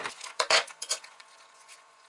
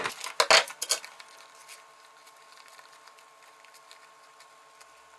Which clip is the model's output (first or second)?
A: first